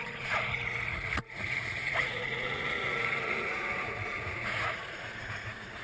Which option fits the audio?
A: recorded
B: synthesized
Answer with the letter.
B